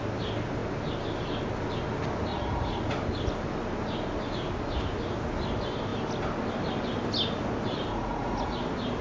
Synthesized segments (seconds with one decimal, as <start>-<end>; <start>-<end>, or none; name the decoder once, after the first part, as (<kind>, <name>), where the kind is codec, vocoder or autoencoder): 2.3-2.8 (vocoder, Vocos); 7.9-8.6